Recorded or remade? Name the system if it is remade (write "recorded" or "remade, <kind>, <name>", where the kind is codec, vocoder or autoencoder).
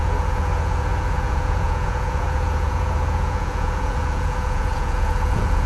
remade, vocoder, Vocos